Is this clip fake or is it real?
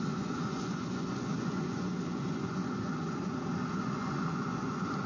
fake